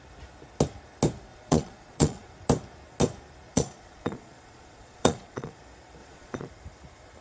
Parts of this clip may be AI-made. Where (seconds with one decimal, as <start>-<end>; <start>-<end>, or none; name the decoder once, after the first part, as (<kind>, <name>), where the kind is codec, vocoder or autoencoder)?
1.3-2.3 (vocoder, Vocos); 3.5-5.6; 6.0-6.5